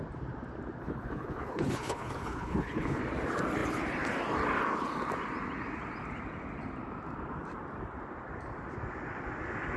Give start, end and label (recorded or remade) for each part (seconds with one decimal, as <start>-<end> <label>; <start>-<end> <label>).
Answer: 0.0-0.8 recorded; 0.8-3.0 remade; 3.0-9.8 recorded

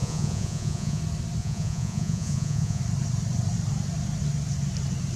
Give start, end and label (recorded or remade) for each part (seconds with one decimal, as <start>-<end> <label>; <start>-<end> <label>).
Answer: 0.0-1.0 remade; 1.0-1.4 recorded; 1.4-2.8 remade; 2.8-5.2 recorded

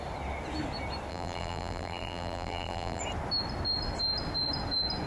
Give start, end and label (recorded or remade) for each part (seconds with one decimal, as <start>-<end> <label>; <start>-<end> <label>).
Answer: 0.0-1.1 recorded; 1.1-3.0 remade; 3.0-5.1 recorded

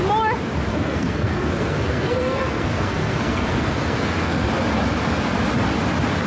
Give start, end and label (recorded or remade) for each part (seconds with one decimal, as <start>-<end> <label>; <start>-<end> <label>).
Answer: 0.0-0.7 recorded; 0.7-4.5 remade; 4.5-6.3 recorded

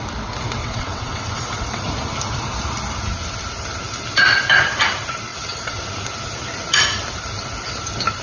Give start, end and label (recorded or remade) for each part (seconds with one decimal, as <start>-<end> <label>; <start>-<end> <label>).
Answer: 0.0-0.6 recorded; 0.6-1.8 remade; 1.8-5.3 recorded; 5.3-5.8 remade; 5.8-8.2 recorded

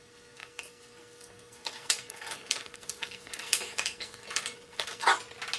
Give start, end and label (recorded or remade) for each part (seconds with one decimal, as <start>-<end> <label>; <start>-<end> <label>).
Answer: 0.0-5.1 remade; 5.1-5.6 recorded

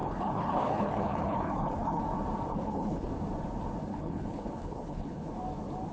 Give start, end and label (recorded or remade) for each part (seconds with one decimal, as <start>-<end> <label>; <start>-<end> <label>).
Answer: 0.0-2.0 remade; 2.0-2.5 recorded; 2.5-3.1 remade; 3.1-3.9 recorded; 3.9-5.3 remade; 5.3-5.9 recorded

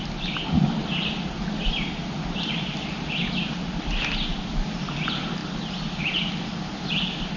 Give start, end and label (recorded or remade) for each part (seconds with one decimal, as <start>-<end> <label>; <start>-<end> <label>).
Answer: 0.0-7.4 recorded